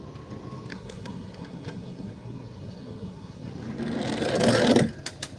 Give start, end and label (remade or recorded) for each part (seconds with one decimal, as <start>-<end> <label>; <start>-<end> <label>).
0.0-0.7 recorded; 0.7-3.5 remade; 3.5-5.4 recorded